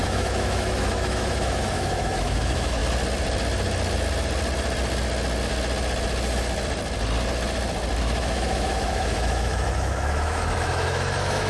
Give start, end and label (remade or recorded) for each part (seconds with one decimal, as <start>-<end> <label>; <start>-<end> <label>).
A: 0.0-2.8 remade; 2.8-8.0 recorded; 8.0-11.5 remade